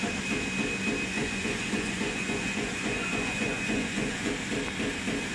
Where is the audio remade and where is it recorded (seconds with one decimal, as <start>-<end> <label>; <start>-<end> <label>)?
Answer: 0.0-1.1 recorded; 1.1-4.3 remade; 4.3-5.3 recorded